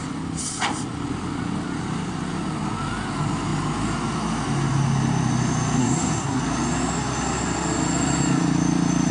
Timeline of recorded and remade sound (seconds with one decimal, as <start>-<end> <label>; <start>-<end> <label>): 0.0-5.8 recorded; 5.8-6.4 remade; 6.4-9.1 recorded